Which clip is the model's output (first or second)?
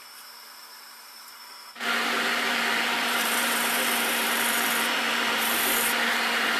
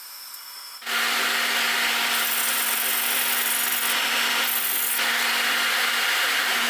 first